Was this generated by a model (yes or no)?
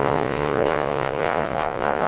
yes